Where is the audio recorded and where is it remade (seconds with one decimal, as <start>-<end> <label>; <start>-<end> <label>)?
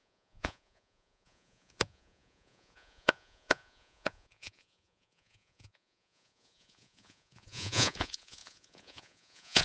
0.0-9.6 remade